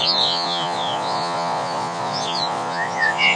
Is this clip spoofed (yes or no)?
yes